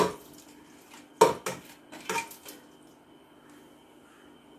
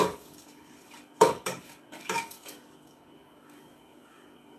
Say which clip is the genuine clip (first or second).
first